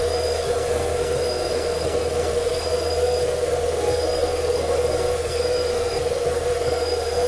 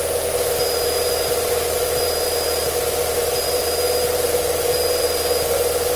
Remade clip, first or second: first